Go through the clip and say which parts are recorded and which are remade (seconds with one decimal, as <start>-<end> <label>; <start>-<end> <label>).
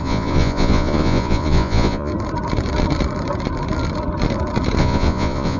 0.0-2.1 remade; 2.1-4.8 recorded; 4.8-5.6 remade